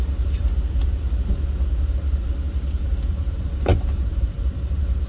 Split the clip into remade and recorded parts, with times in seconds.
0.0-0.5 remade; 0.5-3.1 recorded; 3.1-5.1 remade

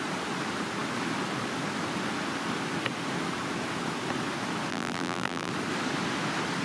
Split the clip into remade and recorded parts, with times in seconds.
0.0-4.7 recorded; 4.7-5.5 remade; 5.5-6.6 recorded

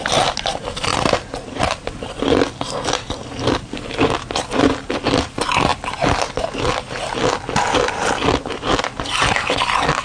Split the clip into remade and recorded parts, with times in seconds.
0.0-10.0 recorded

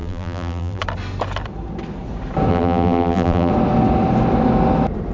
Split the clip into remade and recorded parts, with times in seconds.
0.0-0.8 remade; 0.8-2.5 recorded; 2.5-3.5 remade; 3.5-5.1 recorded

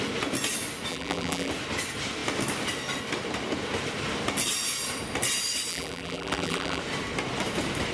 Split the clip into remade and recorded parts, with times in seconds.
0.0-0.9 recorded; 0.9-1.5 remade; 1.5-5.7 recorded; 5.7-6.8 remade; 6.8-7.9 recorded

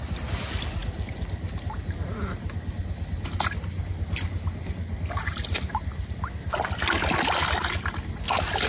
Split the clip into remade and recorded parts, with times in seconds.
0.0-8.7 recorded

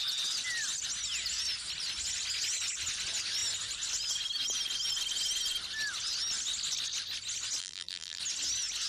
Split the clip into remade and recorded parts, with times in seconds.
0.0-7.6 recorded; 7.6-8.2 remade; 8.2-8.9 recorded

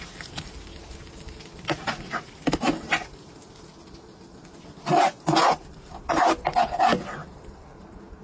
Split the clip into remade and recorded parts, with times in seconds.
0.0-3.7 recorded; 3.7-5.0 remade; 5.0-5.4 recorded; 5.4-6.0 remade; 6.0-8.2 recorded